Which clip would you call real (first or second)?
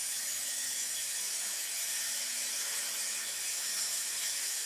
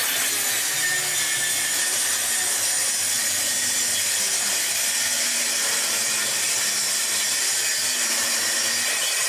second